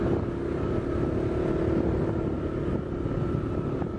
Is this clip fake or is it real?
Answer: real